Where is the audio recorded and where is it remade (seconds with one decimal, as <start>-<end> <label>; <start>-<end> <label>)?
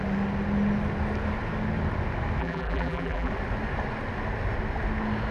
0.0-2.4 recorded; 2.4-3.3 remade; 3.3-5.3 recorded